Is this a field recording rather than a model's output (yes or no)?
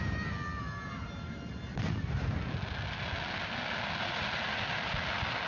yes